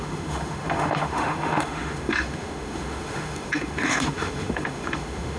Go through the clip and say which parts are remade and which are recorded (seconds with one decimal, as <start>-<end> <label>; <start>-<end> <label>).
0.0-5.4 remade